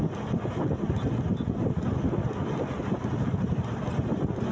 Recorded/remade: recorded